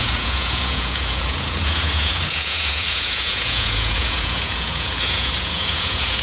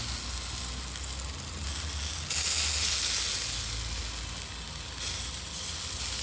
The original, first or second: second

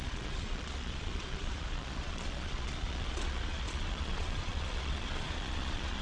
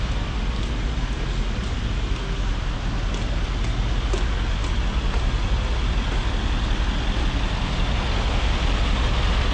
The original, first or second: second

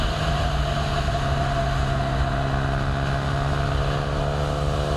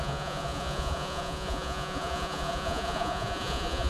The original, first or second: first